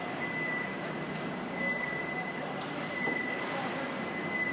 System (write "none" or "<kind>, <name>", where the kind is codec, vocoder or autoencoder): none